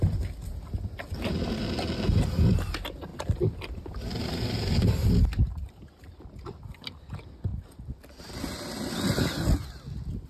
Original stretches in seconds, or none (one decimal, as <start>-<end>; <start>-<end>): 0.0-10.3